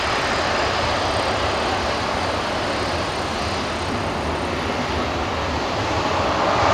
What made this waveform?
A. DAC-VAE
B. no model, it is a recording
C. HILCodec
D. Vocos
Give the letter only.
B